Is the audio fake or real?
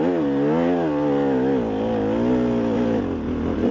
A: real